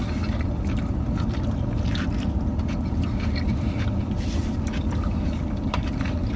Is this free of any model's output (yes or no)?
yes